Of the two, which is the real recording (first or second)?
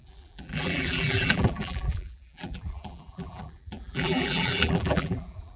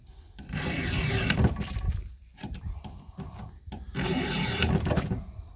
second